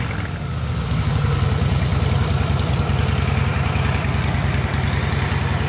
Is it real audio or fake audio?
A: real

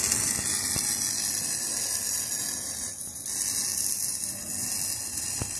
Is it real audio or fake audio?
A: real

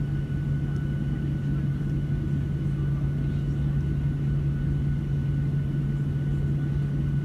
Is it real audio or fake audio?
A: real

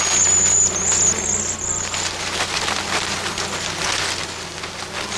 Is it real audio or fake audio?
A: real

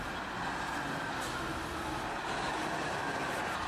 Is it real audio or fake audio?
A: real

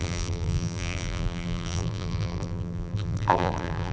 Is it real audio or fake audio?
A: fake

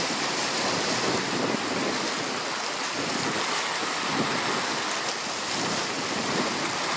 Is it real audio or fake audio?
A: real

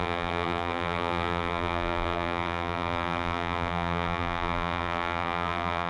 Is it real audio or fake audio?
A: fake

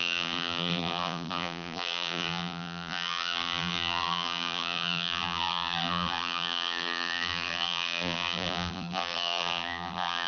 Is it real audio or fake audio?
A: fake